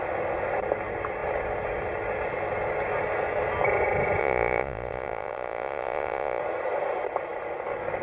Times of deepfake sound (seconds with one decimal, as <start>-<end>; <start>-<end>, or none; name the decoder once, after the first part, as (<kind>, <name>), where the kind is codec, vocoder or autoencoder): 4.2-6.4 (vocoder, Vocos)